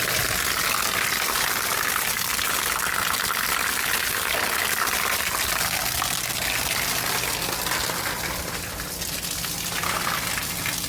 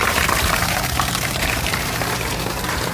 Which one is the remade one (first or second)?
second